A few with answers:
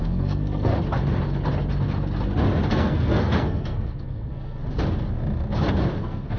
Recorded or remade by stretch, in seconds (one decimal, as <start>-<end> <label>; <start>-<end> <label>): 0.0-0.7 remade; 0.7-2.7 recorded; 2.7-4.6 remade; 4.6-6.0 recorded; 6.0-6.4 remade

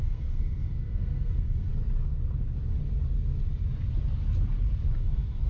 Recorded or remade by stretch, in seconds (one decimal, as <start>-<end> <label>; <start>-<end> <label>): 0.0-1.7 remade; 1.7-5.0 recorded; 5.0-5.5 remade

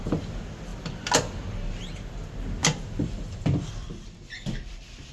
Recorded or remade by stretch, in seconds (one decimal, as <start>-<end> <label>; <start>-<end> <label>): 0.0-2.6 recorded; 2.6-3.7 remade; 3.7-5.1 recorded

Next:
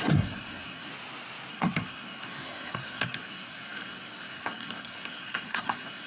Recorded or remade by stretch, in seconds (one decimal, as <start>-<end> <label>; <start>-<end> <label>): 0.0-0.9 remade; 0.9-1.5 recorded; 1.5-6.1 remade

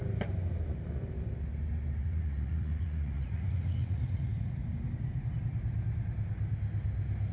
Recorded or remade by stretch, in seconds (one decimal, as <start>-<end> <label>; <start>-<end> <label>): 0.0-2.0 recorded; 2.0-4.6 remade; 4.6-7.3 recorded

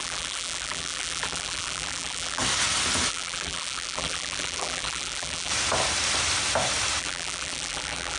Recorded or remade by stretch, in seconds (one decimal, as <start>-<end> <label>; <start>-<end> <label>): 0.0-2.4 remade; 2.4-3.1 recorded; 3.1-5.5 remade; 5.5-7.0 recorded; 7.0-8.2 remade